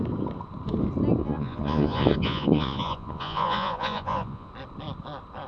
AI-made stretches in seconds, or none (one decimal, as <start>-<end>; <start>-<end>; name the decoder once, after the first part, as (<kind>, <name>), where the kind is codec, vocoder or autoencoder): 1.2-4.5 (vocoder, Vocos)